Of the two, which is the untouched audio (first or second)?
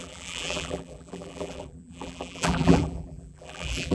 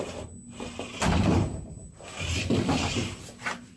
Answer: second